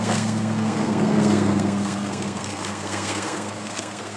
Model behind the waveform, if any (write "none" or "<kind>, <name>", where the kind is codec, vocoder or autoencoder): codec, SNAC